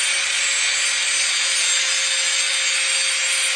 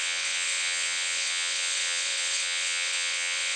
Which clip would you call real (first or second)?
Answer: first